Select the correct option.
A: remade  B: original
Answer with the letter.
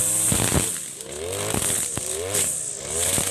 B